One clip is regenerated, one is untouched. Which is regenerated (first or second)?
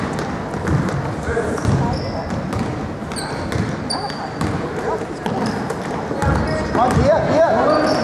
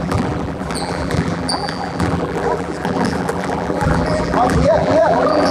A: second